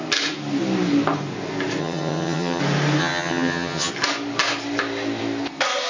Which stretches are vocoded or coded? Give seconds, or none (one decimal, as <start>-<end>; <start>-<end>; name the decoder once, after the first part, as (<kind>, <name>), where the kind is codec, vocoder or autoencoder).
1.8-2.6 (vocoder, HiFi-GAN); 3.0-3.9

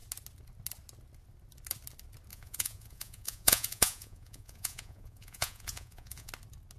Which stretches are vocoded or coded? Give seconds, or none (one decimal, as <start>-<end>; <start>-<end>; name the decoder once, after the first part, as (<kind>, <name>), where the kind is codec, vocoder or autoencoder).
2.3-6.3 (vocoder, Vocos)

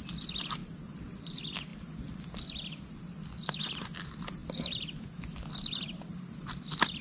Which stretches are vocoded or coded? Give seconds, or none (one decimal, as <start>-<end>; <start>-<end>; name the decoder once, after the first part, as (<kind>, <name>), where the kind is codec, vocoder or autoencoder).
0.6-1.2 (vocoder, BigVGAN v2); 1.7-2.8; 4.4-5.0

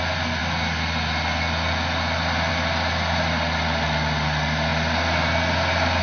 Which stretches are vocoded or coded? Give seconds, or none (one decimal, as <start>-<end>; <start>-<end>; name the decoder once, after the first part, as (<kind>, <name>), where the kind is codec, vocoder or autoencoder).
none

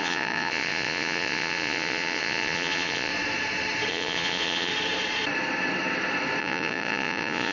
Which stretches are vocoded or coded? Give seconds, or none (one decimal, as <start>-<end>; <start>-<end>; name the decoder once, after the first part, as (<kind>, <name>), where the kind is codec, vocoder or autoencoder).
0.0-3.1 (vocoder, Vocos); 3.9-4.7; 6.4-7.5

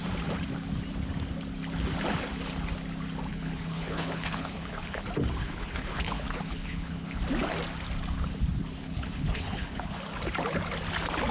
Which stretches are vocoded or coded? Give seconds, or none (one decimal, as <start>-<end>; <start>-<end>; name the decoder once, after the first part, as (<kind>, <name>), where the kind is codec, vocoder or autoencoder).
3.3-5.0 (codec, HILCodec); 5.4-7.2; 8.8-10.0

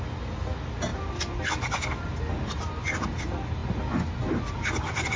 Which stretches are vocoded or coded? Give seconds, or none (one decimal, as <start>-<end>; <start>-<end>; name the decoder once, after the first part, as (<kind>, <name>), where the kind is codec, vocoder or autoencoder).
none

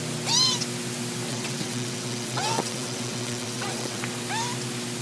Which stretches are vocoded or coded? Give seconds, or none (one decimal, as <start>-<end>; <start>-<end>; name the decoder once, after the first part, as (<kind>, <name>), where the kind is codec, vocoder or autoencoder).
1.3-4.0 (vocoder, WaveNeXt)